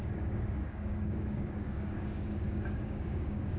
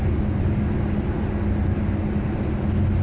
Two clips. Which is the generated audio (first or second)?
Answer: first